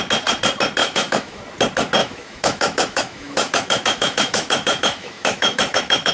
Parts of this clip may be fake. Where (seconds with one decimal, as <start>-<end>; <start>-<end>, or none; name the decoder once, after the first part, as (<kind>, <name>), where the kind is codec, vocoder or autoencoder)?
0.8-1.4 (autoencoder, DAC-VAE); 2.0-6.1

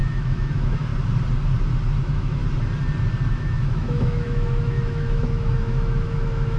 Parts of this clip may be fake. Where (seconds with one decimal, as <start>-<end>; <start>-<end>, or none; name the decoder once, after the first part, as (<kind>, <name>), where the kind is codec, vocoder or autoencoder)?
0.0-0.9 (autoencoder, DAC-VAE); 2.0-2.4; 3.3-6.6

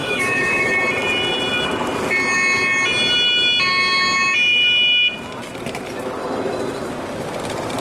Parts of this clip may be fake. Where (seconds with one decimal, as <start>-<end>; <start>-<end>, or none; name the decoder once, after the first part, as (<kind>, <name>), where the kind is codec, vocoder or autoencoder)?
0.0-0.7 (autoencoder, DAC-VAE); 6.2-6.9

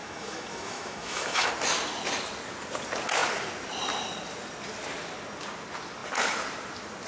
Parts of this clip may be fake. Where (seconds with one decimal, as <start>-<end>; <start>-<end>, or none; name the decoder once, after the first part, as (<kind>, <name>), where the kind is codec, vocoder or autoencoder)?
0.0-1.5 (autoencoder, DAC-VAE)

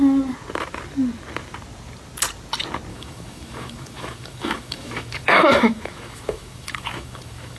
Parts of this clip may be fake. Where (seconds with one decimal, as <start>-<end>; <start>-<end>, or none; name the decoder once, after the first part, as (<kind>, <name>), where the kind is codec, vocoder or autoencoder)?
2.9-7.6 (autoencoder, DAC-VAE)

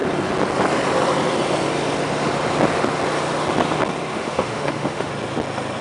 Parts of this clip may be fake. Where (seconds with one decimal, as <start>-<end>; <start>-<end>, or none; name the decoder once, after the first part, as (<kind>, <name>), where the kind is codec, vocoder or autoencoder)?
4.1-5.1 (autoencoder, DAC-VAE)

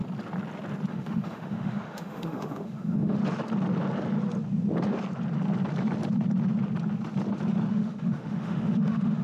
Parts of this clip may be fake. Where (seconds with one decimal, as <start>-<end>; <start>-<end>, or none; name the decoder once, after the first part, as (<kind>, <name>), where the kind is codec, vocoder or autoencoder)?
0.9-3.2 (autoencoder, DAC-VAE); 7.7-9.2

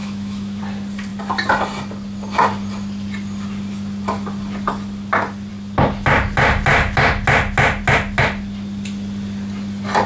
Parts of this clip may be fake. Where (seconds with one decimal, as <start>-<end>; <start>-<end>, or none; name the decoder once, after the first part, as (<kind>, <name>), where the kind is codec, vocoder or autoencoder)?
0.0-0.6 (autoencoder, DAC-VAE)